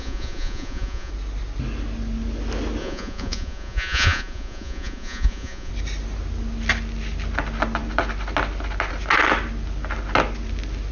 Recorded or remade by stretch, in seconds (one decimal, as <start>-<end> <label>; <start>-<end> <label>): 0.0-1.1 remade; 1.1-2.8 recorded; 2.8-5.7 remade; 5.7-10.9 recorded